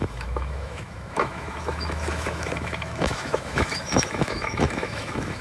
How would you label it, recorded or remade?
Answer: remade